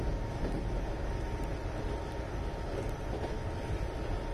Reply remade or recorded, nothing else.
recorded